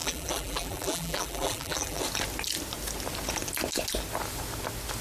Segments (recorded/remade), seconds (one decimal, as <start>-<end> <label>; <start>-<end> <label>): 0.0-2.0 remade; 2.0-5.0 recorded